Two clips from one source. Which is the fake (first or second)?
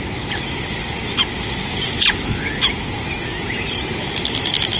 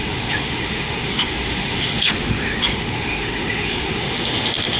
second